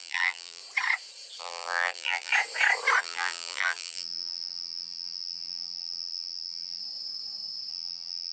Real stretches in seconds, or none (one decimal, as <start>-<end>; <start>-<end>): 0.6-1.4; 2.3-3.0; 6.8-7.7